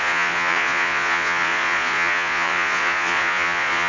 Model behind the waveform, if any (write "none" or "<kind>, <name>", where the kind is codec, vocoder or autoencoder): vocoder, Vocos